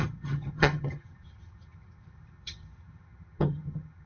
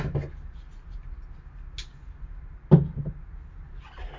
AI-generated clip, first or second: first